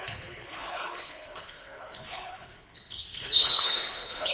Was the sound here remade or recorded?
remade